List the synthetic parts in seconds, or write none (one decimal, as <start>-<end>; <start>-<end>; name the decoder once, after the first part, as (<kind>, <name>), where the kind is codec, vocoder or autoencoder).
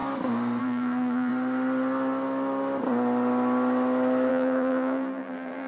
0.6-1.3 (vocoder, BigVGAN v2); 4.3-5.7